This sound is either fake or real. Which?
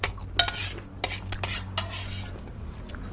real